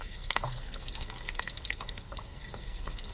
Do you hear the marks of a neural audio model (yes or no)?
yes